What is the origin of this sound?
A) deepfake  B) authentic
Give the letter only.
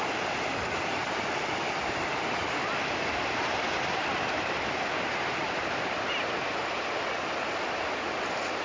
B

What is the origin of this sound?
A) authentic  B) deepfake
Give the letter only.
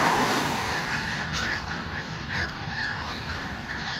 B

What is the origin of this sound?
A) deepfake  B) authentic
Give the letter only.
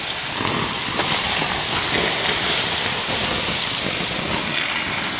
B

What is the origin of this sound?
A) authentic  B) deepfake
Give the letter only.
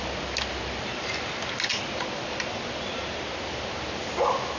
A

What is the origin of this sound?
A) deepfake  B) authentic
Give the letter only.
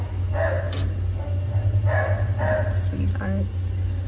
B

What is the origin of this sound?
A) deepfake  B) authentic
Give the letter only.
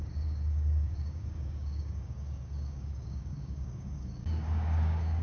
A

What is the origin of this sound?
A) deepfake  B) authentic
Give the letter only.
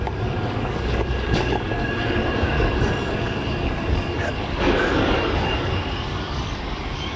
A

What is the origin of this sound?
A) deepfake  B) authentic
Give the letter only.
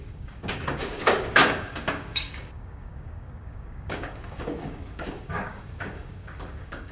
A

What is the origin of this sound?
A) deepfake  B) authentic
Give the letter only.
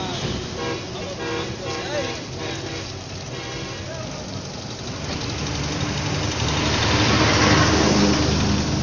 B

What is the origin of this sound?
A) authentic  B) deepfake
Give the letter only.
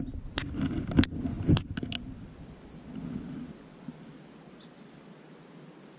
A